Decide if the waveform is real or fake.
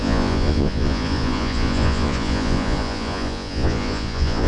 fake